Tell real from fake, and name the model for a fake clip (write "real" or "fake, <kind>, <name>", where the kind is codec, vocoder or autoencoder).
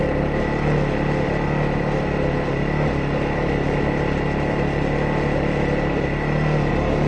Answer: real